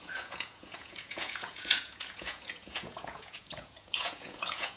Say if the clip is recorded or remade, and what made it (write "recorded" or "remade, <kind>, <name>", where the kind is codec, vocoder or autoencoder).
remade, vocoder, Vocos